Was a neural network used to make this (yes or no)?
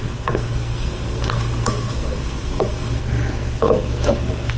yes